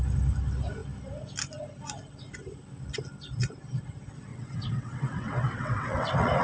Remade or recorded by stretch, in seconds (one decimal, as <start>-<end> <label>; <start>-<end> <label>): 0.0-4.3 recorded; 4.3-6.4 remade